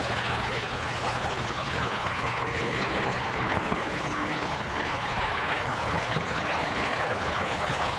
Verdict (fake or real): fake